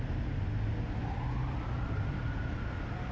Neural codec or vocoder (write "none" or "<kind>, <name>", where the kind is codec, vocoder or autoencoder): none